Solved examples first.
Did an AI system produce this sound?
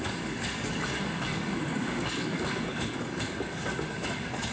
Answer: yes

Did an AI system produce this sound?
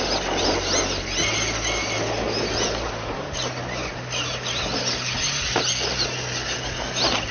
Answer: no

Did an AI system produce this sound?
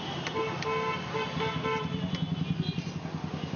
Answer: no